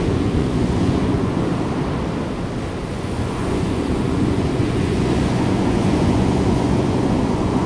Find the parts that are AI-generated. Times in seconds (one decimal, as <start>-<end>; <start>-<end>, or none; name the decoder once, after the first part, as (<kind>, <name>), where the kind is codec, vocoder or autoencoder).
0.0-1.5 (vocoder, Vocos); 2.9-7.7